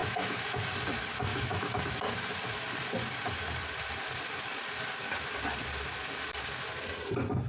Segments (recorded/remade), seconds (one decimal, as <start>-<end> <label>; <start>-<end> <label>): 0.0-0.6 remade; 0.6-1.3 recorded; 1.3-1.8 remade; 1.8-7.5 recorded

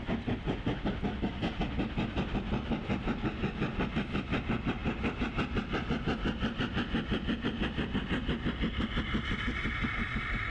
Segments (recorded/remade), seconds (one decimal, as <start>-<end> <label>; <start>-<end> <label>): 0.0-10.5 recorded

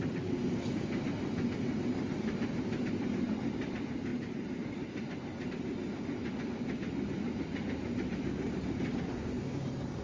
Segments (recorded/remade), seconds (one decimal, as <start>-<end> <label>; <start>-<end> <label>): 0.0-10.0 recorded

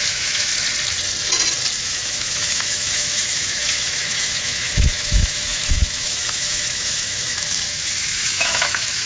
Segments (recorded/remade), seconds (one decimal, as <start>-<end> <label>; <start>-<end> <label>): 0.0-0.5 remade; 0.5-1.8 recorded; 1.8-9.1 remade

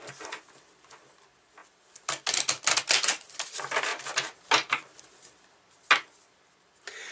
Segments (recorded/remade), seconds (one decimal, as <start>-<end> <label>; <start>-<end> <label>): 0.0-7.1 recorded